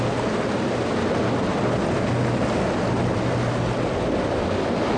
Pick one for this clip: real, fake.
real